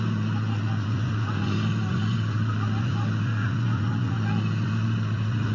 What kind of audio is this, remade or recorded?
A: remade